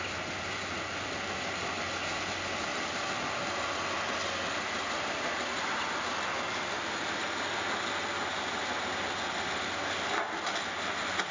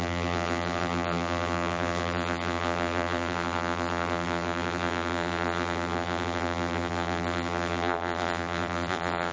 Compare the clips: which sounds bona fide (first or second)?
first